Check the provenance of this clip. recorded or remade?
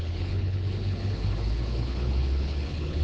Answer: remade